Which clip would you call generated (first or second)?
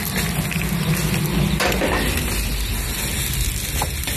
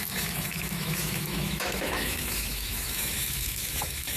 second